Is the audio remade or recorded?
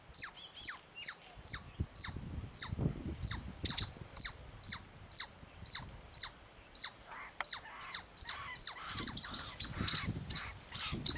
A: recorded